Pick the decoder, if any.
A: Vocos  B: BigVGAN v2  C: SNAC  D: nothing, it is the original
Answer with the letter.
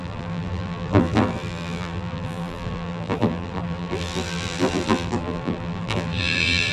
B